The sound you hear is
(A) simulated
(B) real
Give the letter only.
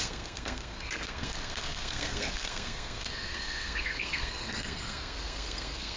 A